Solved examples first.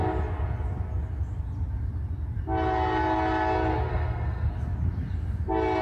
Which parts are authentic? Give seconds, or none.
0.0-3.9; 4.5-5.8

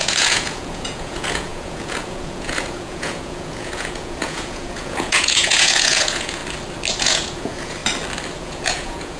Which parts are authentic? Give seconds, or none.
6.4-7.0; 7.8-8.4